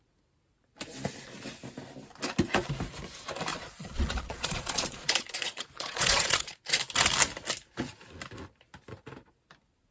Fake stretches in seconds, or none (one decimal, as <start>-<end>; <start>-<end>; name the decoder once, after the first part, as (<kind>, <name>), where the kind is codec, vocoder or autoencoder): 3.5-6.8 (vocoder, Vocos)